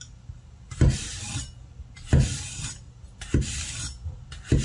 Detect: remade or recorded recorded